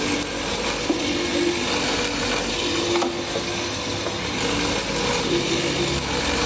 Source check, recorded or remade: recorded